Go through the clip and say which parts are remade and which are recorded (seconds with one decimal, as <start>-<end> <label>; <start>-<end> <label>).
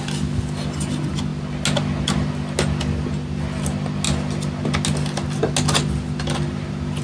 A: 0.0-7.0 recorded